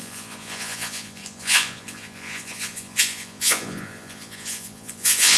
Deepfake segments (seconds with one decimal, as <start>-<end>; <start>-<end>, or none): 0.0-5.4